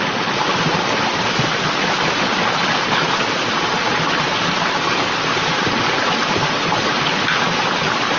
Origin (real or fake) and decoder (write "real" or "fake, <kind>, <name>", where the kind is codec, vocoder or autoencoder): real